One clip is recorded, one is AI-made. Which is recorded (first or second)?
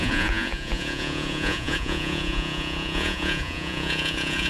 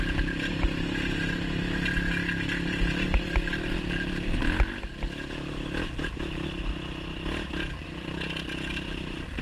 second